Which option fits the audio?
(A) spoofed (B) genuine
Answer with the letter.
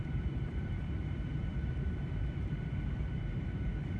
A